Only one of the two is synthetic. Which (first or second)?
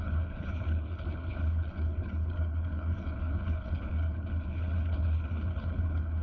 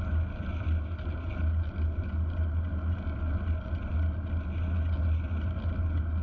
first